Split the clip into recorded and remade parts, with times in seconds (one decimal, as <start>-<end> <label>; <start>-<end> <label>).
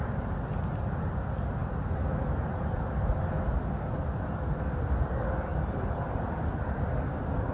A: 0.0-5.5 recorded; 5.5-7.5 remade